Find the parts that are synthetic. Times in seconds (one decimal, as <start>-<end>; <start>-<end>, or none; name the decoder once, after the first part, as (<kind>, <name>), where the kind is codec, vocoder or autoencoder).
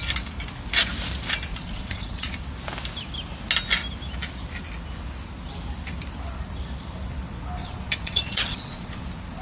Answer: 1.5-2.4 (vocoder, Vocos); 7.6-9.0